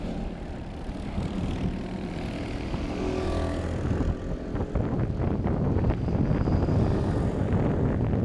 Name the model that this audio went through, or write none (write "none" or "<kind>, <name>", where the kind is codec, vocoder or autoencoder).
none